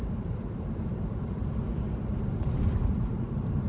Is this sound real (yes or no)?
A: no